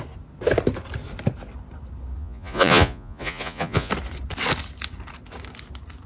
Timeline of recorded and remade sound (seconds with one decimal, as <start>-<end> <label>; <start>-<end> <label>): 0.0-2.2 recorded; 2.2-3.9 remade; 3.9-6.1 recorded

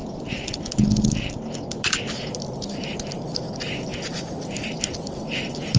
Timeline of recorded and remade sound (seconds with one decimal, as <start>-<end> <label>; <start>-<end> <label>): 0.0-5.8 recorded

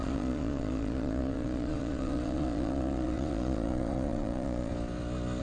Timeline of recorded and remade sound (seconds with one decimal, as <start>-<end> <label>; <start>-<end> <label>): 0.0-4.7 remade; 4.7-5.4 recorded

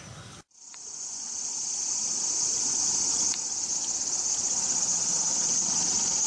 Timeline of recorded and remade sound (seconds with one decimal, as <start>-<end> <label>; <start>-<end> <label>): 0.0-0.7 recorded; 0.7-1.3 remade; 1.3-6.3 recorded

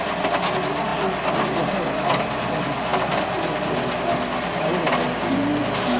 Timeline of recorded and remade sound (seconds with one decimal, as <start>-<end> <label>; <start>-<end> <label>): 0.0-6.0 recorded